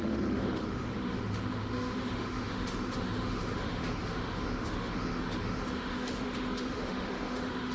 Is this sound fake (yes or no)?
yes